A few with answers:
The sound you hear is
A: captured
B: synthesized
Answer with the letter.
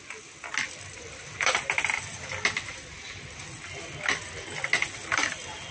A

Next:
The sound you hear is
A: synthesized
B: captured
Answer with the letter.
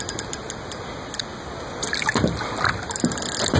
B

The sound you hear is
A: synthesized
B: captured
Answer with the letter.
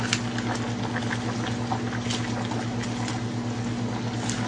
B